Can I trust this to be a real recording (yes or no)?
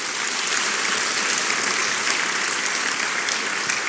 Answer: yes